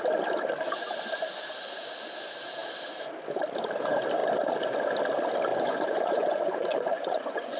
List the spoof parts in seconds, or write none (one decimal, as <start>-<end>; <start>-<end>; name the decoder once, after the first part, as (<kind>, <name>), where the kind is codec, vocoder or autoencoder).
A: 5.5-7.6 (vocoder, Vocos)